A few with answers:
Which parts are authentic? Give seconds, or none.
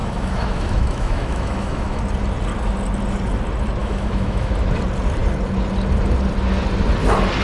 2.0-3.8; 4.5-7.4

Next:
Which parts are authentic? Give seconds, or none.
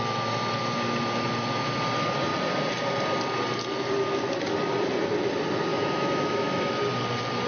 0.0-5.7; 6.8-7.5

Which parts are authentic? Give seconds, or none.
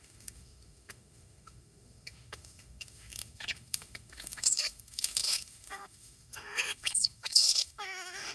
none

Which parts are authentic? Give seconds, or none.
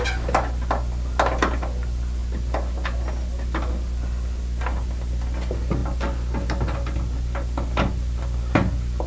0.0-9.1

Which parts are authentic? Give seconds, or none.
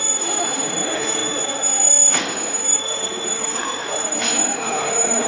none